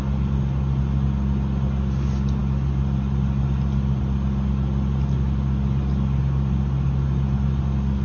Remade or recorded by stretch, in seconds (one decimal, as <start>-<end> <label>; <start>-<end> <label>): 0.0-2.4 recorded; 2.4-4.0 remade; 4.0-8.0 recorded